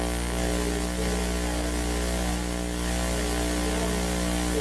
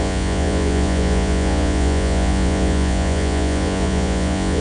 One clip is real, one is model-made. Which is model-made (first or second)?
second